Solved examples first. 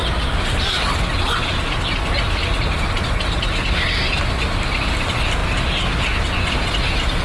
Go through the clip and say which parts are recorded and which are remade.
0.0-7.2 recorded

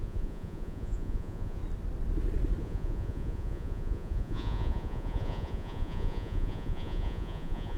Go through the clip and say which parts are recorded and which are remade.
0.0-1.6 remade; 1.6-2.6 recorded; 2.6-7.8 remade

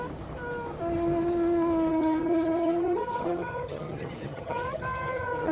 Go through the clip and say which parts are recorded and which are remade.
0.0-1.9 recorded; 1.9-5.5 remade

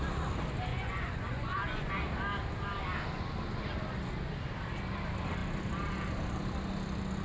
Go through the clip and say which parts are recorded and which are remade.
0.0-0.7 recorded; 0.7-1.9 remade; 1.9-7.2 recorded

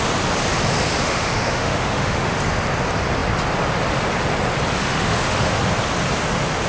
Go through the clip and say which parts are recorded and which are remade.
0.0-1.0 recorded; 1.0-2.4 remade; 2.4-4.8 recorded; 4.8-5.6 remade; 5.6-6.7 recorded

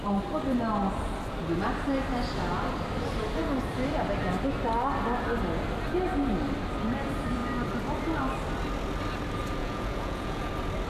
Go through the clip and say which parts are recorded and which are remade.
0.0-9.6 recorded; 9.6-10.5 remade; 10.5-10.9 recorded

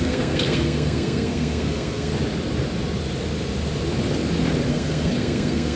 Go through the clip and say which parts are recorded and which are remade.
0.0-2.1 remade; 2.1-4.7 recorded; 4.7-5.8 remade

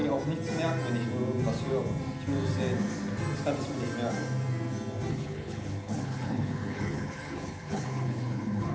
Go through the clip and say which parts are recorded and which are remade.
0.0-5.1 recorded; 5.1-8.7 remade